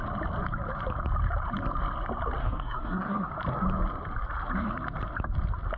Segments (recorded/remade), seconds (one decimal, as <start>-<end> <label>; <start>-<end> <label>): 0.0-2.4 recorded; 2.4-3.3 remade; 3.3-5.8 recorded